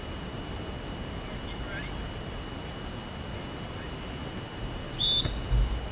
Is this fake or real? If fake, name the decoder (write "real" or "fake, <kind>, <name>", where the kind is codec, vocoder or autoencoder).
real